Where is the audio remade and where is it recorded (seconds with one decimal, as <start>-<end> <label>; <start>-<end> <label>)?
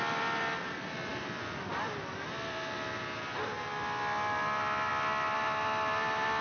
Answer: 0.0-6.4 recorded